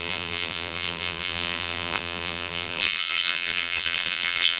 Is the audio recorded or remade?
remade